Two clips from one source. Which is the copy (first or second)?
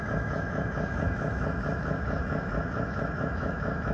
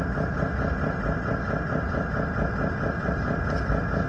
first